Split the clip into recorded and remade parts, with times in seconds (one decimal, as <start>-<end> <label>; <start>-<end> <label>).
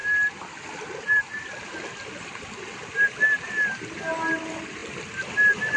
0.0-5.8 recorded